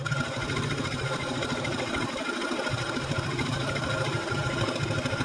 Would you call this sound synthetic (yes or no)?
yes